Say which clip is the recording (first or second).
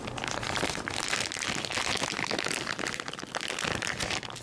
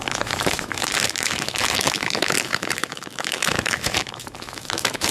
first